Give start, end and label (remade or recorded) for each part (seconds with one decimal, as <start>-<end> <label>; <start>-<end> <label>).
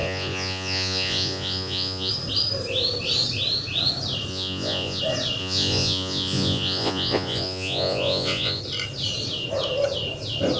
0.0-2.1 remade; 2.1-4.3 recorded; 4.3-5.0 remade; 5.0-5.4 recorded; 5.4-8.6 remade; 8.6-10.6 recorded